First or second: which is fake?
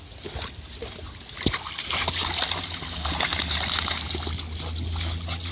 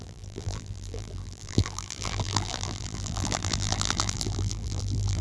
second